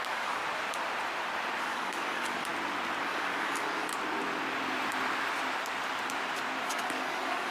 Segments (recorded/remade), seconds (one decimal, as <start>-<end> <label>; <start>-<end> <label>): 0.0-0.4 remade; 0.4-1.6 recorded; 1.6-2.5 remade; 2.5-3.0 recorded; 3.0-3.9 remade; 3.9-6.7 recorded; 6.7-7.5 remade